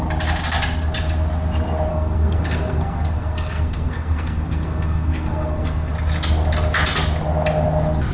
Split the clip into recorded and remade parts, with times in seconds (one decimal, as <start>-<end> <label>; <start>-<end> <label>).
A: 0.0-1.9 recorded; 1.9-5.9 remade; 5.9-8.1 recorded